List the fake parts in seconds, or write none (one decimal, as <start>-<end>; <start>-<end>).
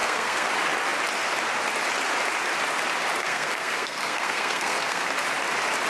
0.0-0.5; 3.2-5.1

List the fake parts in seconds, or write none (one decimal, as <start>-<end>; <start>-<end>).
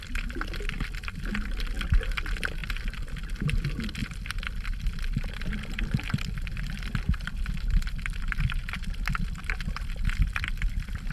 4.0-8.2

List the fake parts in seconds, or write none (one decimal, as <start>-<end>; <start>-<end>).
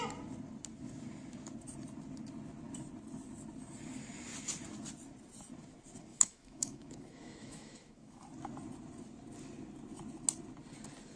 6.1-8.2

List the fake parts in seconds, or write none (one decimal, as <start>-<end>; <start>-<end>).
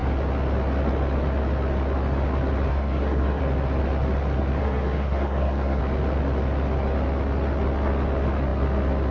2.7-3.4; 4.6-5.8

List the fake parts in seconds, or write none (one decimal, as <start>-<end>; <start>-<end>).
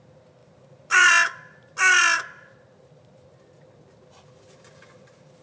0.4-1.1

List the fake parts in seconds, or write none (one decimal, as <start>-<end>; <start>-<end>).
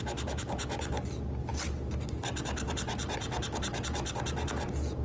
none